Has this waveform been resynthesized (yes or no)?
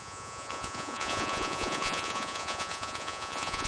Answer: yes